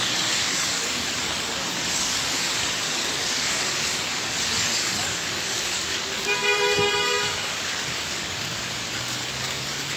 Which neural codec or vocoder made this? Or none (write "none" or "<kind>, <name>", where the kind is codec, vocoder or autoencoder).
codec, DAC